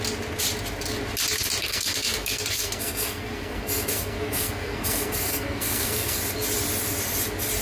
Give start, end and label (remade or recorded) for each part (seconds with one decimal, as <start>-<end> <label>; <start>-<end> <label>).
0.0-1.6 recorded; 1.6-6.2 remade; 6.2-7.6 recorded